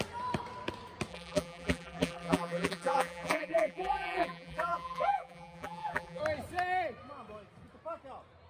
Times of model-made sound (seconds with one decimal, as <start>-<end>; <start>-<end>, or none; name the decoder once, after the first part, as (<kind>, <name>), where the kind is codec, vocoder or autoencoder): 1.1-6.2 (vocoder, BigVGAN v2)